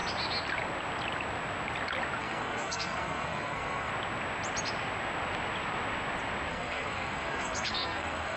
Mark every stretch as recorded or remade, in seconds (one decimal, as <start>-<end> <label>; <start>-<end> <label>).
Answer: 0.0-2.2 recorded; 2.2-3.9 remade; 3.9-6.5 recorded; 6.5-8.4 remade